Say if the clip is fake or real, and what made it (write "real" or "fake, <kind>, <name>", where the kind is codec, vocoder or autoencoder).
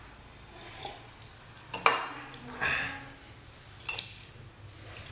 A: real